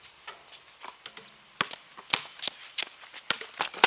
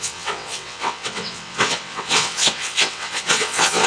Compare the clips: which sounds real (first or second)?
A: first